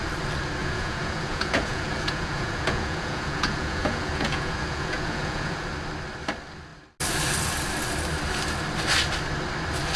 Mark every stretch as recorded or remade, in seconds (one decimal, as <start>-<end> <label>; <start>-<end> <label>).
0.0-0.6 recorded; 0.6-5.7 remade; 5.7-10.0 recorded